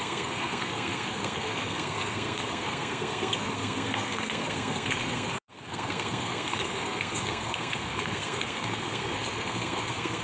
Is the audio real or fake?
fake